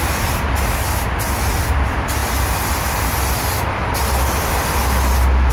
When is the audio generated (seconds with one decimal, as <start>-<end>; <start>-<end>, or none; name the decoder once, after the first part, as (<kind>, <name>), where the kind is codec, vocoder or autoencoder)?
none